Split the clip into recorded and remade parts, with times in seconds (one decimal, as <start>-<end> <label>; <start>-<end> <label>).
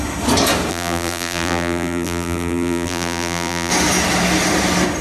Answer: 0.0-0.7 recorded; 0.7-3.7 remade; 3.7-5.0 recorded